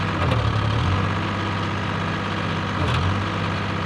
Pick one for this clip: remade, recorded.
recorded